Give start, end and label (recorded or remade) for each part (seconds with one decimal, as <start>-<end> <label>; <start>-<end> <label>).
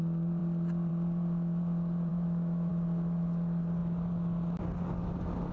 0.0-2.1 recorded; 2.1-2.7 remade; 2.7-5.5 recorded